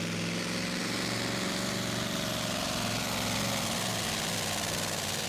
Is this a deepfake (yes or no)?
no